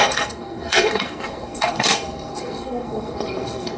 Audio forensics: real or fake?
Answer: fake